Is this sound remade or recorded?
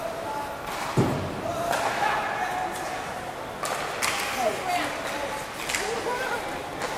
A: recorded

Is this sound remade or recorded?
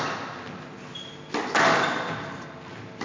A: recorded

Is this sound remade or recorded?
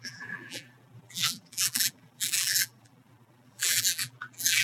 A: remade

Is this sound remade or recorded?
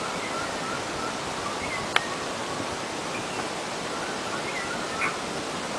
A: recorded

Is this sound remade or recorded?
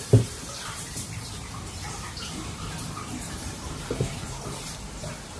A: remade